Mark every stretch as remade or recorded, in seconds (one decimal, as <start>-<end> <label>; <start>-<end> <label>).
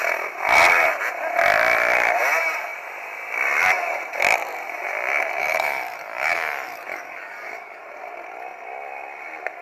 0.0-5.4 recorded; 5.4-7.8 remade; 7.8-9.6 recorded